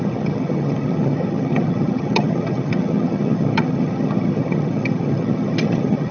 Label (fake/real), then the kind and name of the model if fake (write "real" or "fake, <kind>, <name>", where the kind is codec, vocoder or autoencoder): fake, vocoder, HiFi-GAN